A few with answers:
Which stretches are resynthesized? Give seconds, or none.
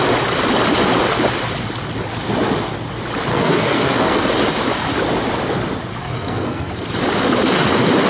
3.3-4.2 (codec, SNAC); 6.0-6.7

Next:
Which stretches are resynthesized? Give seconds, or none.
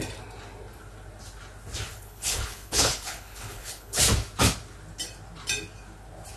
1.9-4.0 (codec, HILCodec)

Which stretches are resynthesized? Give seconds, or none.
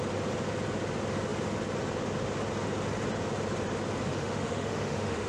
4.1-5.3 (autoencoder, DAC-VAE)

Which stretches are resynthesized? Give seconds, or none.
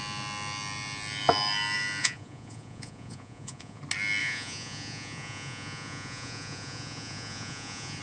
2.0-3.8 (vocoder, Vocos); 4.2-8.0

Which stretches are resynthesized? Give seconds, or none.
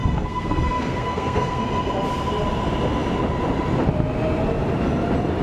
0.0-1.6 (codec, SNAC)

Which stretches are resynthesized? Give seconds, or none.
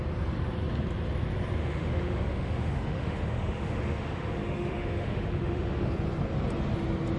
1.6-5.9 (autoencoder, DAC-VAE)